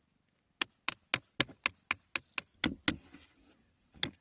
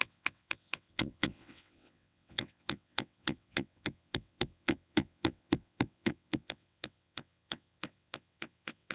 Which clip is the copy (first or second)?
second